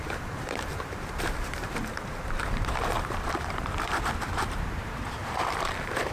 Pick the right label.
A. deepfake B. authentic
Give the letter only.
A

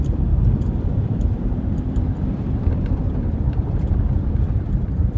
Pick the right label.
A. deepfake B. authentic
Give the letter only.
A